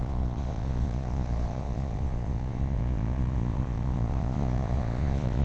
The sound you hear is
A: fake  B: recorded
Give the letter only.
A